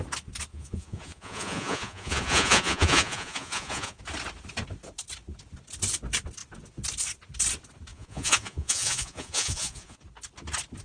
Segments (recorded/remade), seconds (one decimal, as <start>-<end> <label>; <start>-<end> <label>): 0.0-0.5 recorded; 0.5-4.0 remade; 4.0-7.9 recorded; 7.9-10.0 remade; 10.0-10.8 recorded